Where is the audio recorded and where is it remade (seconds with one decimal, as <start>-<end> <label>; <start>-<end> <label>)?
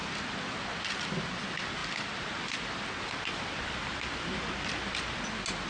0.0-5.7 recorded